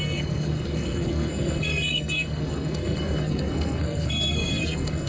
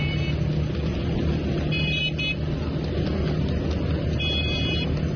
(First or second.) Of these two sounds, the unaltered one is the second